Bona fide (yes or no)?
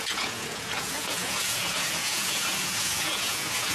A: no